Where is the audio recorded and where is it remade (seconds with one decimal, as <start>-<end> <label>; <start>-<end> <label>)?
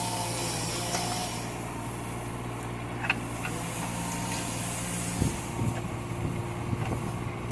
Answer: 0.0-7.5 recorded